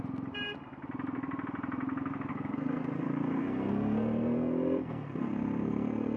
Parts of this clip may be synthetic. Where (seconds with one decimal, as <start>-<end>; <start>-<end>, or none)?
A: 2.3-6.2